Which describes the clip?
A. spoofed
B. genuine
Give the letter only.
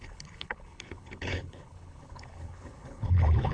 A